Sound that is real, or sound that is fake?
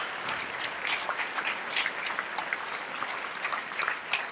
real